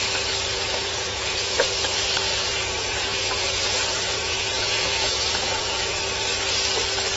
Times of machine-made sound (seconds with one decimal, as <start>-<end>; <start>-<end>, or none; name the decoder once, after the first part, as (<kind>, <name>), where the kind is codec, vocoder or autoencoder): 0.5-1.6 (vocoder, Vocos); 2.3-6.0